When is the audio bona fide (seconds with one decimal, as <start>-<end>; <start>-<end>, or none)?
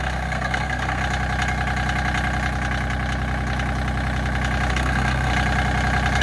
1.0-4.7; 5.3-6.2